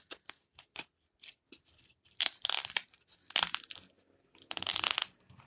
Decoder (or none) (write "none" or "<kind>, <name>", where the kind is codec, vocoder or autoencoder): none